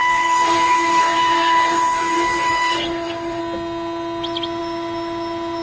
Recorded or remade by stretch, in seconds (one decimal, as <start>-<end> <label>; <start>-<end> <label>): 0.0-3.4 remade; 3.4-5.6 recorded